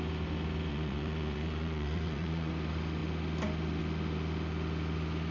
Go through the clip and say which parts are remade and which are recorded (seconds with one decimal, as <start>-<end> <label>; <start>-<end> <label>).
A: 0.0-0.7 recorded; 0.7-2.5 remade; 2.5-5.3 recorded